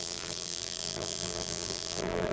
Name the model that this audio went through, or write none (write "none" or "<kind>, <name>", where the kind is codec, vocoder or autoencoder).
vocoder, BigVGAN v2